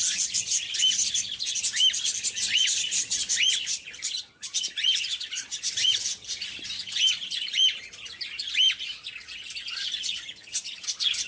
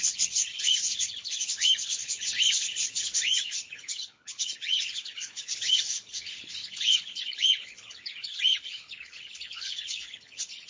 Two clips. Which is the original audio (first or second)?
first